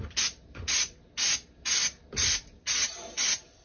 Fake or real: real